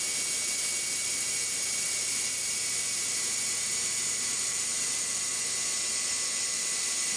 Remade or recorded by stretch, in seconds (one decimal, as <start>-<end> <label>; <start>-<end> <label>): 0.0-1.0 recorded; 1.0-5.3 remade; 5.3-7.2 recorded